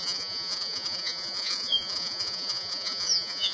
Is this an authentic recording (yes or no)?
no